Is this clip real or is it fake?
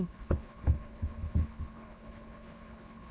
fake